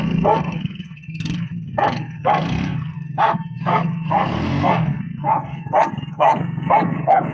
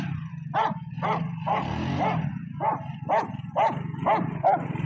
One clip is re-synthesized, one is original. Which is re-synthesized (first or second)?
first